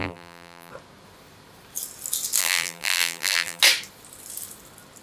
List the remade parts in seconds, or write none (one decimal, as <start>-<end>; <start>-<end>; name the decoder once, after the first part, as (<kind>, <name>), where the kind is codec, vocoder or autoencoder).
0.0-0.7 (vocoder, BigVGAN v2); 2.4-3.6